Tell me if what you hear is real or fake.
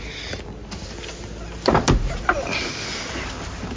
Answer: real